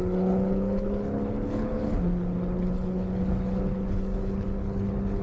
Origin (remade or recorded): remade